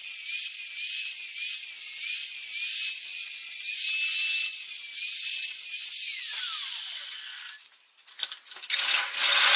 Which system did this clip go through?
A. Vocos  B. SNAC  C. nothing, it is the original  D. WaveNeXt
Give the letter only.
C